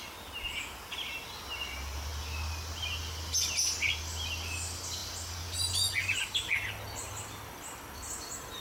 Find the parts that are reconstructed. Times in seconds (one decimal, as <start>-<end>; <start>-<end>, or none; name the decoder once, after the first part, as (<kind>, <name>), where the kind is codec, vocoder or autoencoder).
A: none